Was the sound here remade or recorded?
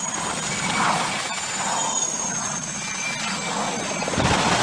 recorded